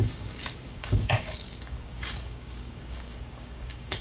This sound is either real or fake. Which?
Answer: fake